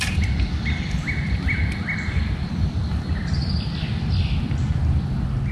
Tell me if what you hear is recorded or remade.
recorded